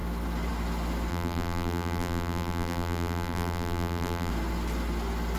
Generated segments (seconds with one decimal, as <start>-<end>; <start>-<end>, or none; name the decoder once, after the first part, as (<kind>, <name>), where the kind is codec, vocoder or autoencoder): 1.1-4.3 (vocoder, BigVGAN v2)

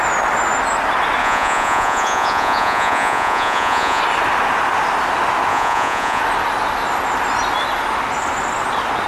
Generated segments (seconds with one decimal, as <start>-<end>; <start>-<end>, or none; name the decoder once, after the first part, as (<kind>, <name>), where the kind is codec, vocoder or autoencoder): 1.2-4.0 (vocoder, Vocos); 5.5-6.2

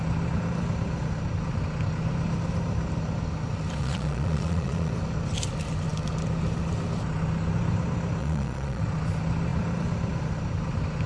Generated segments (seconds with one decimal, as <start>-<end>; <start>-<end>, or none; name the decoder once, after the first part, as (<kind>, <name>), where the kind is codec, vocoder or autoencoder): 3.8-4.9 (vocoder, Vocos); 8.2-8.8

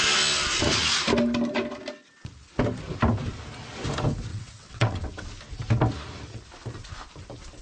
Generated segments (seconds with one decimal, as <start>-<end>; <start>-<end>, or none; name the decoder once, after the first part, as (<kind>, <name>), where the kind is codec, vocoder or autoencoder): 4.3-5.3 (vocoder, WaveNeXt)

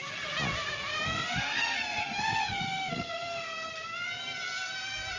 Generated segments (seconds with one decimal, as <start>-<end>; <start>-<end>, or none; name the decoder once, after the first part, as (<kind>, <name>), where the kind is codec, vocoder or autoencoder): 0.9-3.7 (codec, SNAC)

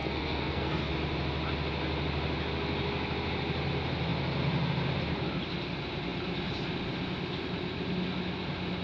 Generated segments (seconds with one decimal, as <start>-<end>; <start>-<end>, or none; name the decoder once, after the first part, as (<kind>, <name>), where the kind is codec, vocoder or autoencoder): 0.0-0.9 (codec, SNAC)